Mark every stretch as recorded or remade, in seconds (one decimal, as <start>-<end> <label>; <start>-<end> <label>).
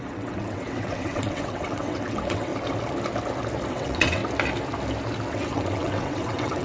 0.0-2.5 remade; 2.5-3.7 recorded; 3.7-4.2 remade; 4.2-5.3 recorded; 5.3-6.6 remade